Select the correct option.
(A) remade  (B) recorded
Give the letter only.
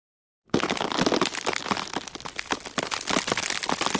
B